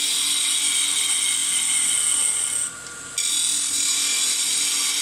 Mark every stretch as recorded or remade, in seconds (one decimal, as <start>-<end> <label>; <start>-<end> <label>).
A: 0.0-5.0 recorded